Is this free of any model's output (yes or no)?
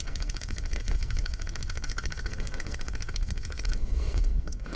no